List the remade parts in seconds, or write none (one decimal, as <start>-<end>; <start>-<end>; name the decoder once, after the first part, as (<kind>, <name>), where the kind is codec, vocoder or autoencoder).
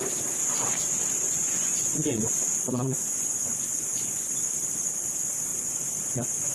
0.4-4.3 (vocoder, Vocos); 5.5-6.5